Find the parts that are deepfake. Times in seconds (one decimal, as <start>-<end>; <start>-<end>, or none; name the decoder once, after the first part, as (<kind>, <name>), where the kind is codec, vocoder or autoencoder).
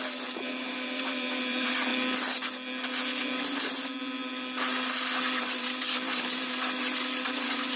0.0-1.9 (vocoder, BigVGAN v2); 5.4-7.8